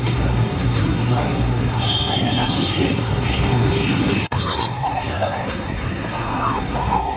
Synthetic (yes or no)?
yes